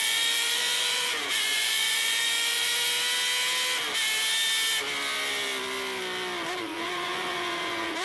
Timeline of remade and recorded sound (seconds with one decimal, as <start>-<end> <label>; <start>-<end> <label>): 0.0-2.7 remade; 2.7-6.6 recorded; 6.6-8.0 remade